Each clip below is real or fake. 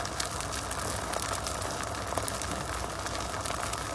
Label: real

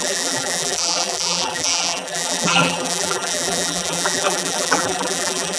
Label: fake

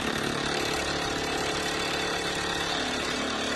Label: real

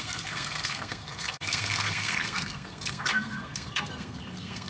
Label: fake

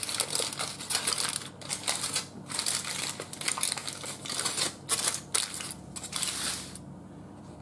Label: real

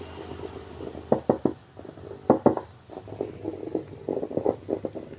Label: real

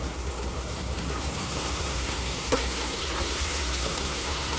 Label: fake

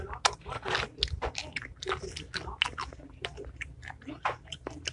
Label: real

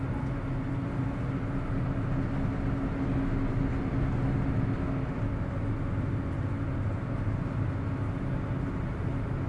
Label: real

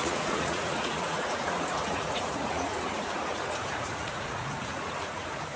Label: fake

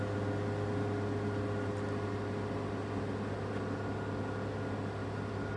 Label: real